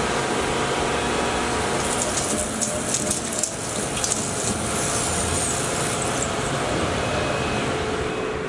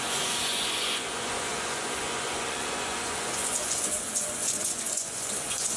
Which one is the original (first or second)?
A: first